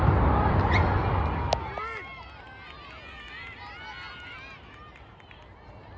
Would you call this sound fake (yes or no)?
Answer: no